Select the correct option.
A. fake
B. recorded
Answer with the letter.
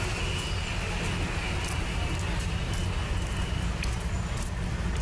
B